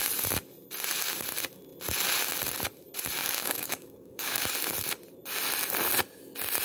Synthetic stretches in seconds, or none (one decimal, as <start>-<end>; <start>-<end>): 3.2-4.5